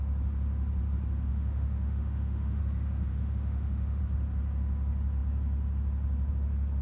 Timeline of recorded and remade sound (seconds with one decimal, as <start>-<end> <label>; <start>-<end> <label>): 0.0-1.3 recorded; 1.3-2.6 remade; 2.6-3.1 recorded; 3.1-4.0 remade; 4.0-6.8 recorded